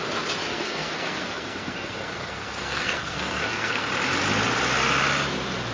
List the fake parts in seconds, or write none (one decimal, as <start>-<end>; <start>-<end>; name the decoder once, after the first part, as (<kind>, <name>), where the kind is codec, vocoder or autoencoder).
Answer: 0.5-3.9 (codec, SNAC)